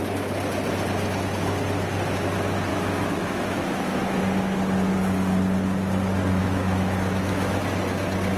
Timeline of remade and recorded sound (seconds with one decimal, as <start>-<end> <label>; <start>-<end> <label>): 0.0-2.7 recorded; 2.7-4.2 remade; 4.2-6.4 recorded; 6.4-7.6 remade; 7.6-8.4 recorded